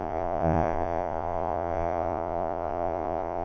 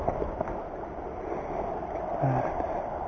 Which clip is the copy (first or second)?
first